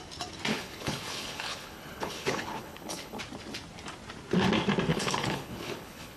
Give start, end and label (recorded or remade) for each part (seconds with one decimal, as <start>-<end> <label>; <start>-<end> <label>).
0.0-0.5 recorded; 0.5-3.2 remade; 3.2-4.9 recorded; 4.9-6.2 remade